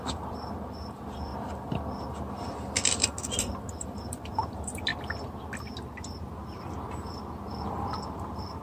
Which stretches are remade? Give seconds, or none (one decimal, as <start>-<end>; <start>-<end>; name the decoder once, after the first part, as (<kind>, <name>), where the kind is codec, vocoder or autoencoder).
0.0-1.3 (vocoder, BigVGAN v2); 3.8-4.9; 7.6-8.6